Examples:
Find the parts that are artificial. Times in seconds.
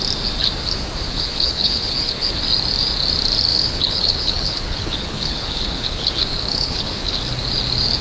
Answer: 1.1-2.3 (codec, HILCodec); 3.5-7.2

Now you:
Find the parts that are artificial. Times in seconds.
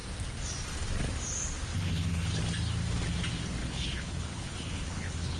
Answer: 1.7-2.4 (codec, HILCodec); 3.6-5.4